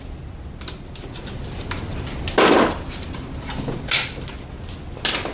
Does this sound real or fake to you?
real